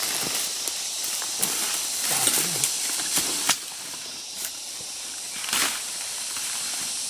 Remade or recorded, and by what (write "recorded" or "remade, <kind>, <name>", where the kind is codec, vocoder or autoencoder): remade, vocoder, BigVGAN v2